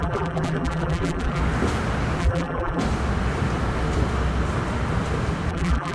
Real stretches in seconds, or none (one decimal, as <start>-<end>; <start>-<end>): 1.4-2.2; 2.8-5.5